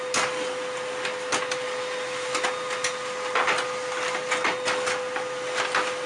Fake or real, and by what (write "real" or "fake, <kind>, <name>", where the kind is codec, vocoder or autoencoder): real